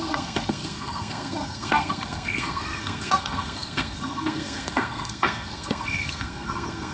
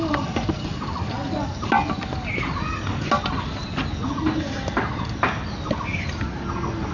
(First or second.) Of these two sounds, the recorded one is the second